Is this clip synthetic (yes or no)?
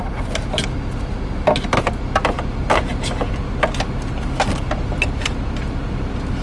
no